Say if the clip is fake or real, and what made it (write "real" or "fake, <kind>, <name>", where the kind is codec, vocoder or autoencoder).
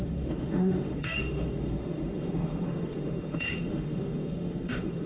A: fake, autoencoder, DAC-VAE